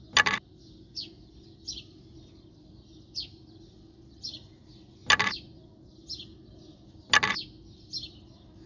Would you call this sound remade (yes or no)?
no